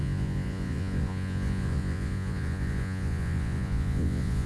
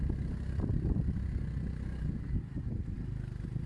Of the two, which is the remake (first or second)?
first